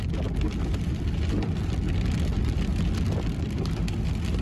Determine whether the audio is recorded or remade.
recorded